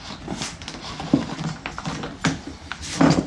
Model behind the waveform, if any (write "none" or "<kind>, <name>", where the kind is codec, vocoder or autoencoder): none